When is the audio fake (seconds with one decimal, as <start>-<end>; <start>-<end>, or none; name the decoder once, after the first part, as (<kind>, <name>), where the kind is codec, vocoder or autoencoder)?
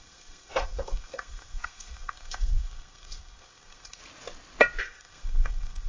0.0-4.0 (codec, SNAC); 4.8-5.9